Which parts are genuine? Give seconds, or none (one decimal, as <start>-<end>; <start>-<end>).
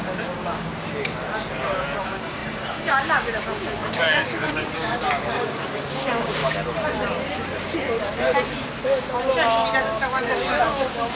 0.7-2.0; 6.4-9.8